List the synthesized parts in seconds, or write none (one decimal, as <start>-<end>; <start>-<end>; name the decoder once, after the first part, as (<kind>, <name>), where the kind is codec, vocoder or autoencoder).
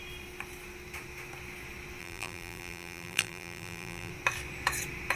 2.0-4.1 (vocoder, BigVGAN v2)